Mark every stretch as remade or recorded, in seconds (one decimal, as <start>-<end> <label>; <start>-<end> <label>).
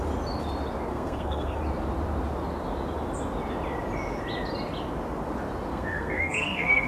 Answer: 0.0-0.9 recorded; 0.9-1.6 remade; 1.6-5.7 recorded; 5.7-6.9 remade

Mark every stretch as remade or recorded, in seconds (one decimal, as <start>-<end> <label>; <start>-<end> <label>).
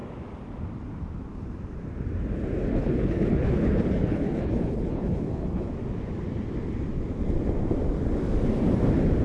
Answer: 0.0-2.7 recorded; 2.7-5.7 remade; 5.7-9.2 recorded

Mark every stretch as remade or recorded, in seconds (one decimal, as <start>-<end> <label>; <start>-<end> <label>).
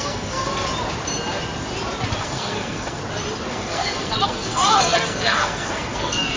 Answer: 0.0-0.5 remade; 0.5-2.2 recorded; 2.2-3.0 remade; 3.0-3.5 recorded; 3.5-6.4 remade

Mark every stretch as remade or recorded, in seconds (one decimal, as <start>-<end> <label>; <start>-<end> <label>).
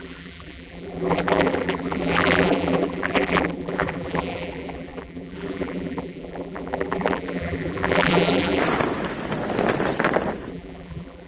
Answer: 0.0-8.6 remade; 8.6-10.5 recorded; 10.5-11.3 remade